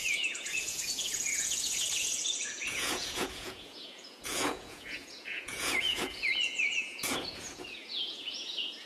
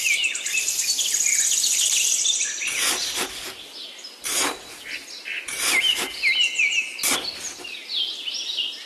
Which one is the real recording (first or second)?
second